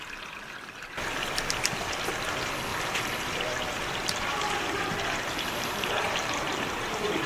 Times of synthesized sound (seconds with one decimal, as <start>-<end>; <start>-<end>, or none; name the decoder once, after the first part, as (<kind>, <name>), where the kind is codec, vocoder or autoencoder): 2.7-7.3 (vocoder, BigVGAN v2)